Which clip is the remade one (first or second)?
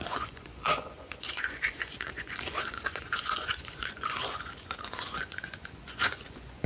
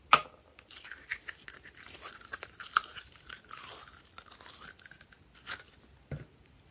first